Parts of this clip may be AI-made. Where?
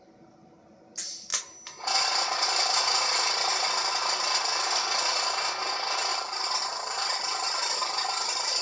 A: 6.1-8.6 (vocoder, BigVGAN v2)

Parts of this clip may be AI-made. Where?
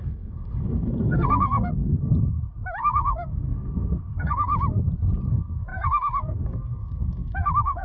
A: 0.0-2.1 (codec, SNAC); 2.8-4.5; 5.3-7.8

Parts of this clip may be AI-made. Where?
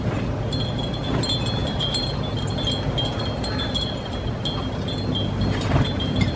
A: none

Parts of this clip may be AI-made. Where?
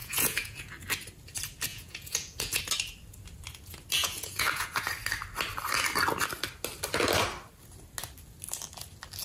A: 0.0-0.7 (vocoder, Vocos); 1.7-2.6; 4.0-4.8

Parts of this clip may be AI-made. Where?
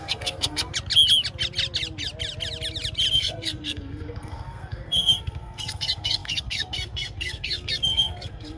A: 0.0-0.7 (codec, SNAC); 3.1-8.6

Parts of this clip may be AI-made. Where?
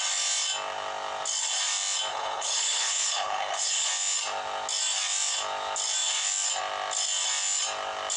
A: 2.1-3.9 (codec, HILCodec)